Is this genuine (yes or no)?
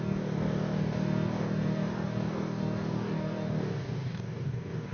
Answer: no